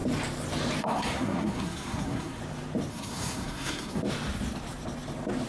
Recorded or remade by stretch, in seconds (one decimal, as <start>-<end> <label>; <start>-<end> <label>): 0.0-0.8 recorded; 0.8-2.4 remade; 2.4-2.9 recorded; 2.9-4.0 remade; 4.0-5.5 recorded